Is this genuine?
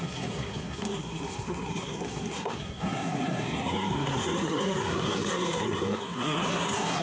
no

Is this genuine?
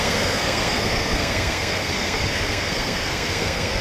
no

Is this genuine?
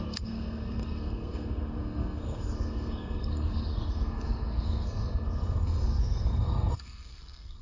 no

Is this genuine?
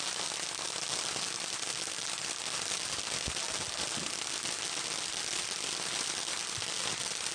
yes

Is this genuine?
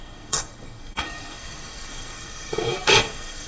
no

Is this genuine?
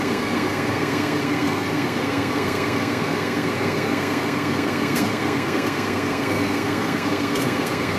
no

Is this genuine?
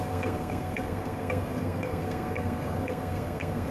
no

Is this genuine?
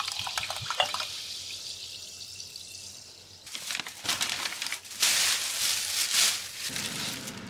yes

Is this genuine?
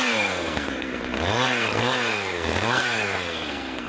no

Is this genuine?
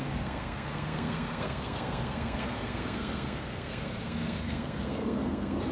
no